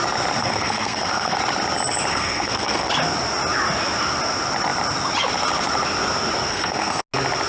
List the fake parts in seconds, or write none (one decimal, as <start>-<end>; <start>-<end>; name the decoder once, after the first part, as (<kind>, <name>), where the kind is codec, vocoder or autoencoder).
0.4-1.4 (codec, SNAC); 2.1-2.9; 6.5-7.0